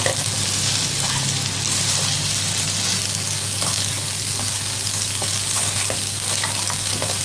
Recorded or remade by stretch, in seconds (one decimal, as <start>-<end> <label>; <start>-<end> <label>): 0.0-3.0 recorded; 3.0-7.2 remade